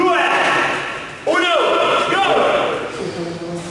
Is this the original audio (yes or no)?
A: yes